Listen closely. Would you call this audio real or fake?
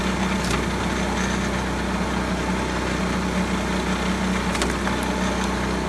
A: real